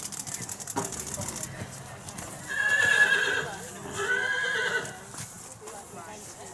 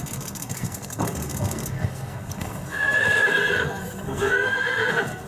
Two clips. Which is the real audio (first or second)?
first